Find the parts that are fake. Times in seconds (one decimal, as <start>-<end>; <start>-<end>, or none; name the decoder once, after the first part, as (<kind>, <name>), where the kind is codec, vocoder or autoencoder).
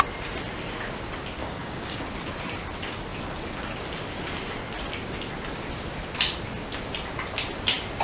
1.4-2.0 (codec, DAC)